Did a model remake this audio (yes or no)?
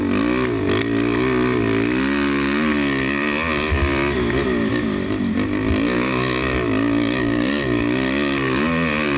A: no